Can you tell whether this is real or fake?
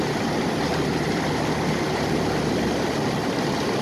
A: real